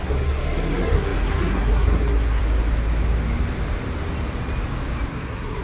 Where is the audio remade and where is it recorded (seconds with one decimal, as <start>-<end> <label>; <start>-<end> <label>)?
0.0-2.4 remade; 2.4-5.1 recorded; 5.1-5.6 remade